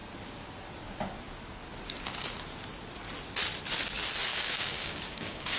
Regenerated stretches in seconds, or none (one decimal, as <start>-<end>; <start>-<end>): 4.3-5.6